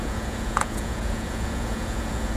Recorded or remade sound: remade